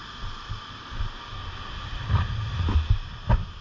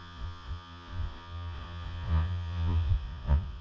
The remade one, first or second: second